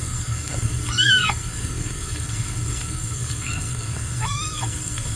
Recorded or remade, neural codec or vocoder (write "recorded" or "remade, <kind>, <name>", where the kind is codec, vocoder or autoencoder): remade, codec, SNAC